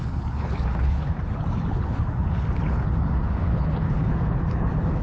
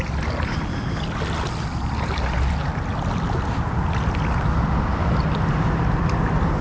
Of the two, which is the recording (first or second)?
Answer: second